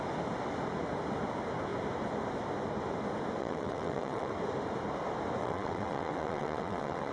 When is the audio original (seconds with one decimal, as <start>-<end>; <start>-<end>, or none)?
0.0-3.4; 4.3-5.4